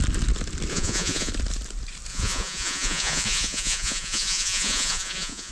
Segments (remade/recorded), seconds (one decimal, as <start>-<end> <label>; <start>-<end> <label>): 0.0-0.7 recorded; 0.7-1.3 remade; 1.3-2.1 recorded; 2.1-5.5 remade